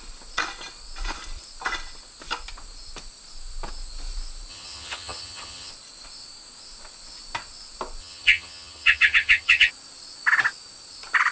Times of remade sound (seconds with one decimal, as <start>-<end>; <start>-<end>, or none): 4.5-5.7; 8.0-9.7